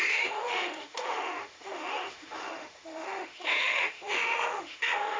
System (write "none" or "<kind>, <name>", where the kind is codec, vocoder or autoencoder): autoencoder, DAC-VAE